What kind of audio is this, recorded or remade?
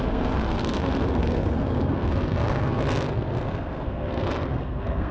remade